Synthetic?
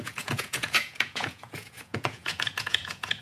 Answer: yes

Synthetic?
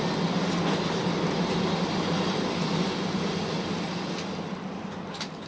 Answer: no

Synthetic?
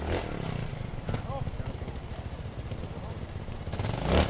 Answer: no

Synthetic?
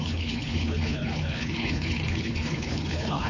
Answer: yes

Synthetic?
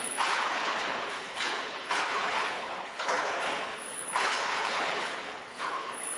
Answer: yes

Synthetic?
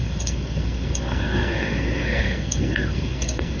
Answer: yes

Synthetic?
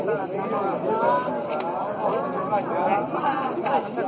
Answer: no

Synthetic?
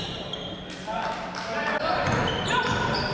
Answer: no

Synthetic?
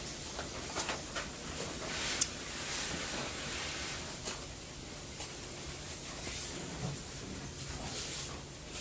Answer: no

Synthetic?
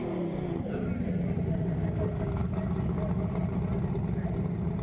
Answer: no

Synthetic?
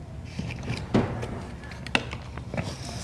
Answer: no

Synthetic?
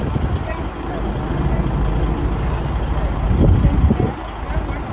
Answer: no